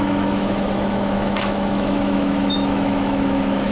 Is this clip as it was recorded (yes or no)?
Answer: no